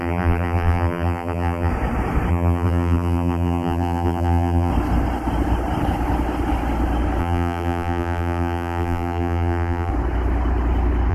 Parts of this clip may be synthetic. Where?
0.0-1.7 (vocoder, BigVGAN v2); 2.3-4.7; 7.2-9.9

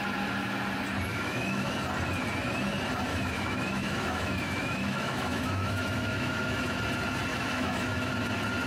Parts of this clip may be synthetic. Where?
1.1-1.7 (autoencoder, DAC-VAE); 3.1-6.8; 7.3-8.1

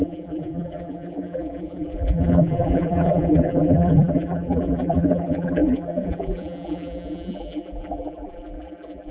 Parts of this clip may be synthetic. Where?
0.0-9.1 (vocoder, BigVGAN v2)

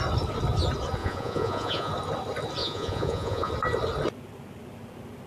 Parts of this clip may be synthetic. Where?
1.0-1.9 (vocoder, Vocos); 2.6-3.5

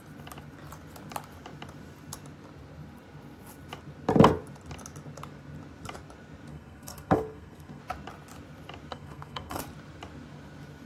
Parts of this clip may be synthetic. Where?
6.5-7.8 (codec, SNAC); 8.9-9.6

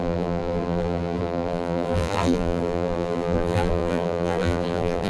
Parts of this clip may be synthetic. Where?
0.0-5.1 (vocoder, BigVGAN v2)

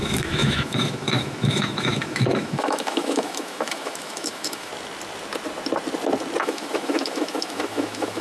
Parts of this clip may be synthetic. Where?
0.0-4.7 (autoencoder, DAC-VAE); 6.4-8.2

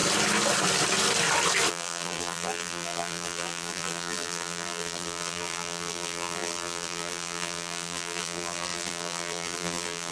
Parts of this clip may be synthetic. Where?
1.7-10.1 (vocoder, BigVGAN v2)